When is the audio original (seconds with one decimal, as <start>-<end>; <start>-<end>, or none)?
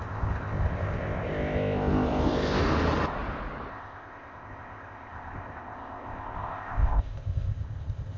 2.6-3.7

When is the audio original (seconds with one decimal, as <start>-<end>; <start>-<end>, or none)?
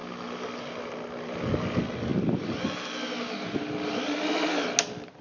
0.0-5.2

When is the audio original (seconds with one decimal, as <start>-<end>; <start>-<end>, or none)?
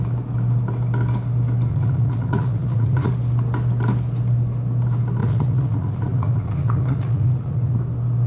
0.0-1.7; 3.1-5.2; 7.8-8.3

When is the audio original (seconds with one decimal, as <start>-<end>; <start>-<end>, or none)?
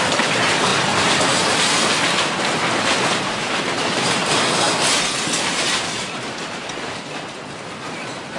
0.7-3.2; 4.2-5.2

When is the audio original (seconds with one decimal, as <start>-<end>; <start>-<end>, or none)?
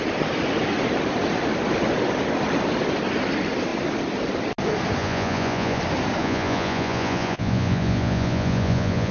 0.0-5.0; 5.8-6.2